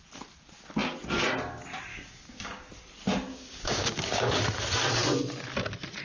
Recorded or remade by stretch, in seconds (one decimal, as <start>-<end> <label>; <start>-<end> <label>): 0.0-1.9 recorded; 1.9-2.7 remade; 2.7-3.3 recorded; 3.3-4.4 remade; 4.4-6.0 recorded